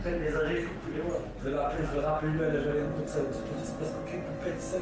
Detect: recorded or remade recorded